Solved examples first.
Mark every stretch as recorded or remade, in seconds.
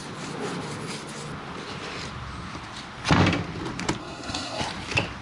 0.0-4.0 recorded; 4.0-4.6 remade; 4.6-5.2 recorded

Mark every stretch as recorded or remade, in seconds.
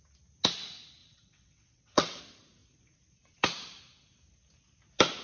0.0-1.0 recorded; 1.0-2.2 remade; 2.2-5.2 recorded